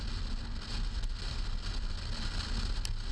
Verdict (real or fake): real